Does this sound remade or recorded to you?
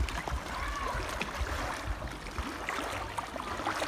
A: recorded